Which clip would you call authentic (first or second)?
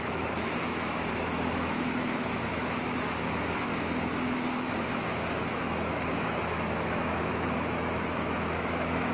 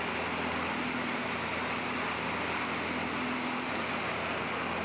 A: second